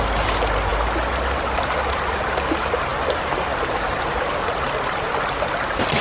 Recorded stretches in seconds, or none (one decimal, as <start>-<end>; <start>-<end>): 0.0-6.0